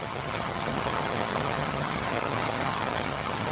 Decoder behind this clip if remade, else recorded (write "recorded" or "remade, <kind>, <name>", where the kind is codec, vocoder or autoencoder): remade, vocoder, HiFi-GAN